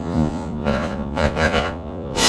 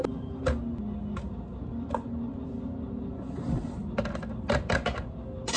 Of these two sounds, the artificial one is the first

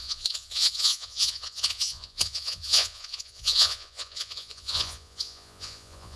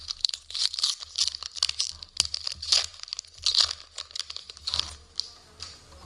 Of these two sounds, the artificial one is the first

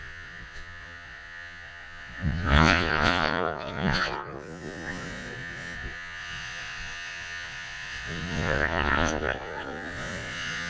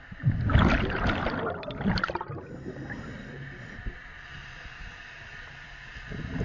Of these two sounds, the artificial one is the first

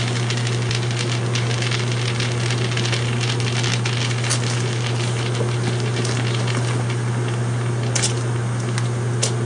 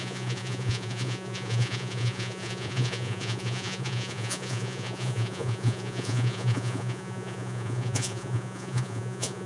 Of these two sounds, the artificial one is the second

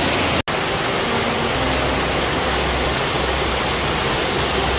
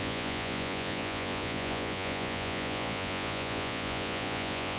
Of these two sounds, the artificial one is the second